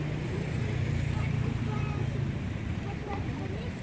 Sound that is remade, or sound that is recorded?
recorded